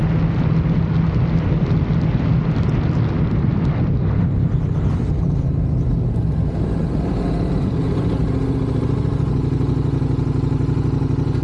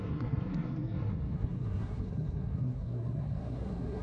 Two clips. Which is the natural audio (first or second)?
first